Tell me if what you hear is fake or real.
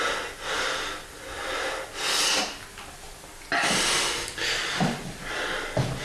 real